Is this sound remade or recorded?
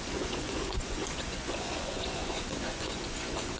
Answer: remade